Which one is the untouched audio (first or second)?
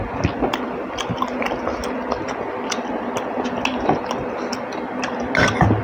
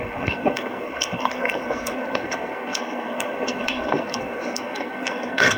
first